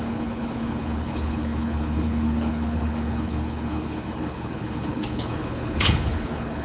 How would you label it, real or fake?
fake